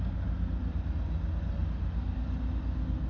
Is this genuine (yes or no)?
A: yes